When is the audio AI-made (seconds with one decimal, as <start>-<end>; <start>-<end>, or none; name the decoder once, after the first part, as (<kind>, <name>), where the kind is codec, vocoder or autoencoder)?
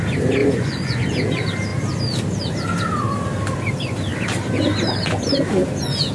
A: 0.4-1.1 (vocoder, Vocos)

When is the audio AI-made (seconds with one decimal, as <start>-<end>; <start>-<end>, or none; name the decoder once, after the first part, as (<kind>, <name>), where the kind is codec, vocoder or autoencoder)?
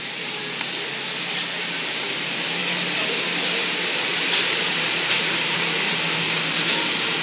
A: 0.0-0.4 (vocoder, BigVGAN v2); 1.4-2.6; 3.6-7.2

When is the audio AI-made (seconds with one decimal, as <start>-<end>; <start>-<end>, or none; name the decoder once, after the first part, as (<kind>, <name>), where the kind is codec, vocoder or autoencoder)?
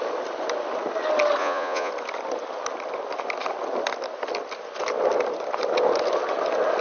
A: 1.4-1.9 (vocoder, Vocos)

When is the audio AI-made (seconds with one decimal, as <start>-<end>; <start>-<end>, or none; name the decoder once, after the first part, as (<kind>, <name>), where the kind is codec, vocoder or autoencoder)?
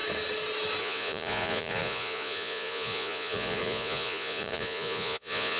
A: 0.8-5.6 (vocoder, Vocos)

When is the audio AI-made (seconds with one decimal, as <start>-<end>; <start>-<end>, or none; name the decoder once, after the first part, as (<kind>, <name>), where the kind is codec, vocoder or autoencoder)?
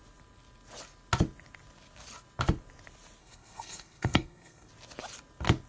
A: 3.2-4.7 (codec, SNAC)